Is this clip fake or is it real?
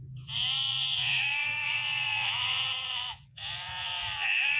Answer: fake